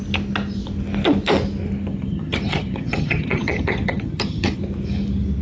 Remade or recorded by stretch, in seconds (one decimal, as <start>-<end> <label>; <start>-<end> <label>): 0.0-1.9 recorded; 1.9-4.6 remade; 4.6-5.4 recorded